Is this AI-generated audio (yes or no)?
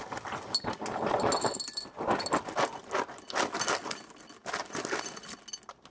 no